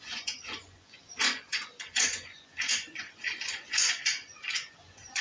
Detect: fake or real fake